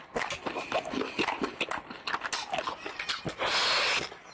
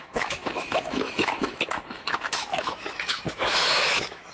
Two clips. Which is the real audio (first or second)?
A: first